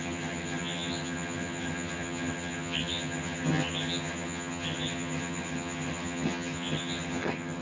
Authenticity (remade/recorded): remade